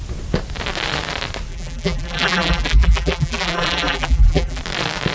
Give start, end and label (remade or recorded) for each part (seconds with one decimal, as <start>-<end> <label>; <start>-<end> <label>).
0.0-1.5 recorded; 1.5-4.6 remade; 4.6-5.1 recorded